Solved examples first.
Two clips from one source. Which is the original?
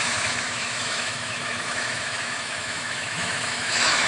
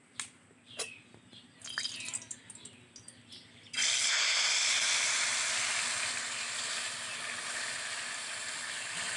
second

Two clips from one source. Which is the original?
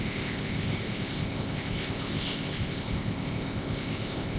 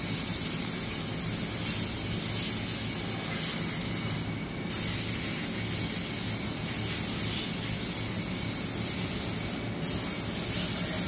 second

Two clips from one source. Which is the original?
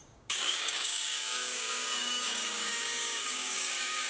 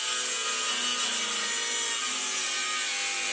second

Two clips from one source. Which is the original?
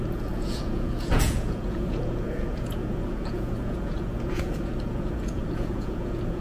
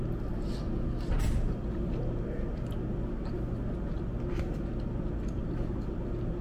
second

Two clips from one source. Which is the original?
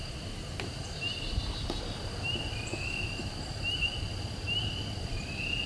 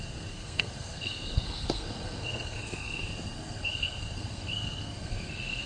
first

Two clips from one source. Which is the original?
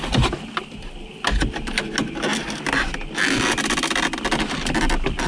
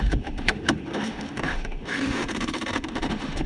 first